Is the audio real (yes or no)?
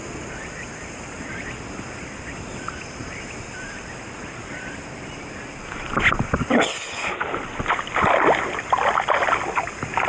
yes